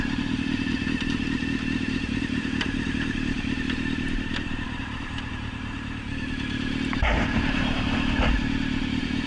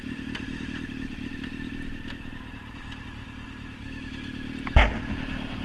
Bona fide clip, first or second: second